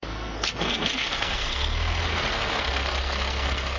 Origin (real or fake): fake